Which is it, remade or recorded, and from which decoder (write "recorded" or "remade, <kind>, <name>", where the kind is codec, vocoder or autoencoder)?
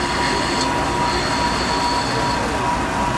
recorded